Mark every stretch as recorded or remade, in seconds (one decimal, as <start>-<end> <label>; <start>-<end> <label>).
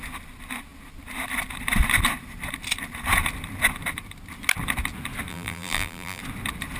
0.0-5.3 recorded; 5.3-6.2 remade; 6.2-6.8 recorded